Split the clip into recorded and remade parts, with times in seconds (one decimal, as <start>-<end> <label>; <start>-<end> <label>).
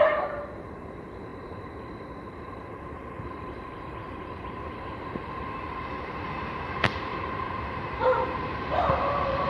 0.0-1.3 recorded; 1.3-6.3 remade; 6.3-7.1 recorded; 7.1-9.5 remade